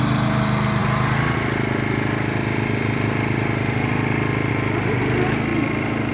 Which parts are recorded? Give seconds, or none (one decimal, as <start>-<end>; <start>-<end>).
0.0-5.5